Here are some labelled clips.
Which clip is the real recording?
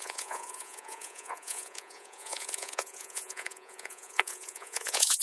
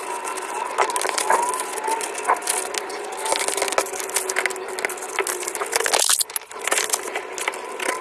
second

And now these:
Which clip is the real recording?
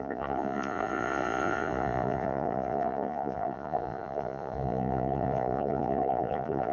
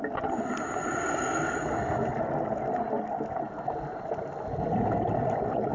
second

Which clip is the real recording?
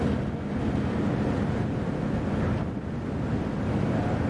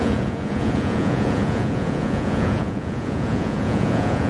first